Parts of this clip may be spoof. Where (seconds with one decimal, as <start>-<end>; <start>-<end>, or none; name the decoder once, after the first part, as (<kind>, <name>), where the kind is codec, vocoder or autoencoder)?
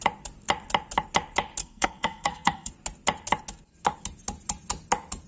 1.6-2.7 (codec, SNAC)